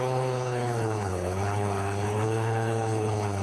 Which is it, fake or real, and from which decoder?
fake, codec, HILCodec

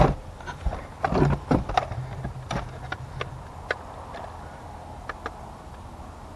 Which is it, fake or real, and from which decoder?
real